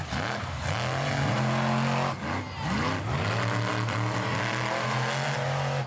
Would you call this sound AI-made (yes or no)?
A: no